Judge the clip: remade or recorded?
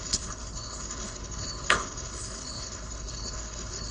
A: remade